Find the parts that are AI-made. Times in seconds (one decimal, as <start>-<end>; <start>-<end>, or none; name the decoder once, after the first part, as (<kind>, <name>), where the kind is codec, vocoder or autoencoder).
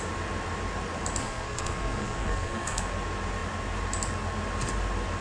1.2-2.8 (codec, SNAC)